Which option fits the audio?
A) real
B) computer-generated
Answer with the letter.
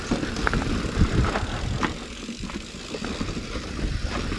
A